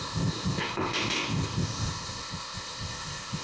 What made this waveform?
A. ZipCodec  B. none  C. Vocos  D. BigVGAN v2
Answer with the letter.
A